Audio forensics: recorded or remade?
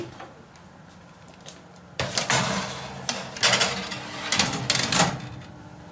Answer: recorded